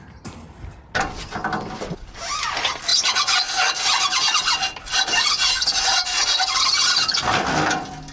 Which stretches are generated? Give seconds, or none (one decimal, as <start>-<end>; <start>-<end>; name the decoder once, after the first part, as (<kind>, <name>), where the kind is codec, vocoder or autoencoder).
none